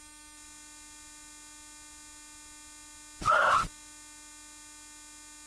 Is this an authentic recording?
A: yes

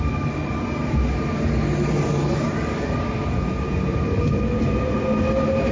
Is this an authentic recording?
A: yes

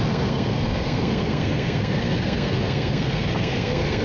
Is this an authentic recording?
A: no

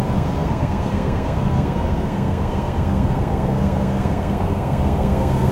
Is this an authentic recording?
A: no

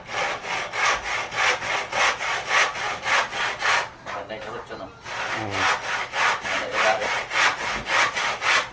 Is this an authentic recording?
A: yes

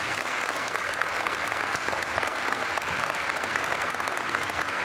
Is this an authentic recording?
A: no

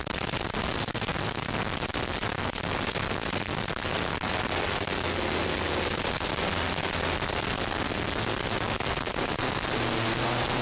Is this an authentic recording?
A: yes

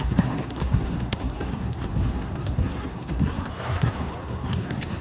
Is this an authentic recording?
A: no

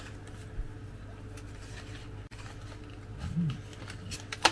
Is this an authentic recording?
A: yes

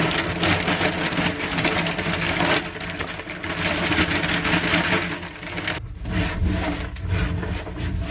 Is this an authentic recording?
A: yes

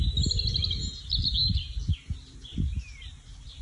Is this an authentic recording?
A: yes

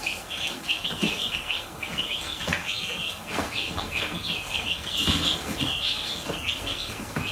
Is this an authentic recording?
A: no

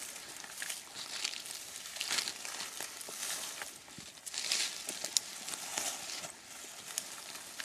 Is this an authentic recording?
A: yes